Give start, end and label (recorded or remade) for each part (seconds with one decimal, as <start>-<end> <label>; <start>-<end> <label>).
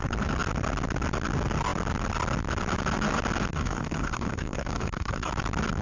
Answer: 0.0-3.5 recorded; 3.5-5.3 remade; 5.3-5.8 recorded